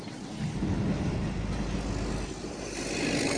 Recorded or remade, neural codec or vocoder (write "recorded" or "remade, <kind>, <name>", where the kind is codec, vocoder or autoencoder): recorded